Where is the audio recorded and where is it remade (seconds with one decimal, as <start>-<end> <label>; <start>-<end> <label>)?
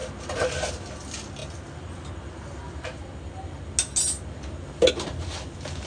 0.0-5.9 recorded